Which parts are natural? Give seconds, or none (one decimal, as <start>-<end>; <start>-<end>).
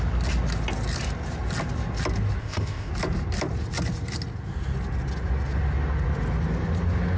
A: 0.0-2.4; 2.9-7.2